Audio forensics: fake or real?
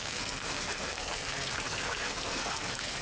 fake